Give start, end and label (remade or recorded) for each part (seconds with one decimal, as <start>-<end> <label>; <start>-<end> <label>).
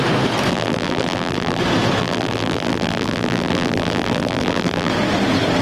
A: 0.0-0.5 recorded; 0.5-1.6 remade; 1.6-2.0 recorded; 2.0-4.9 remade; 4.9-5.6 recorded